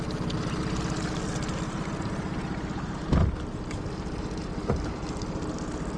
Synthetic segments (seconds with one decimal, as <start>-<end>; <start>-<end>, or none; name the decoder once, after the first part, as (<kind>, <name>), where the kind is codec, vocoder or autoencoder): none